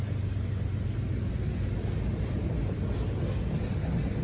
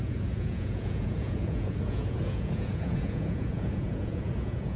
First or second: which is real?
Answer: first